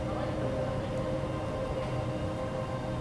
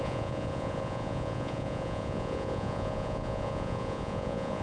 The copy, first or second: second